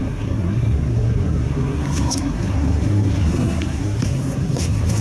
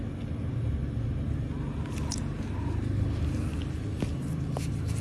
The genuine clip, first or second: second